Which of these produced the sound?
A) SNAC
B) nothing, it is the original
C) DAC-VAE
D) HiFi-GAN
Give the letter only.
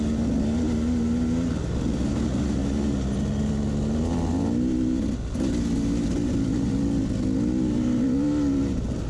B